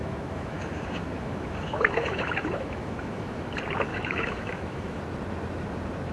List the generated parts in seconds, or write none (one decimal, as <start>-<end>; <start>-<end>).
0.0-3.5; 3.9-5.0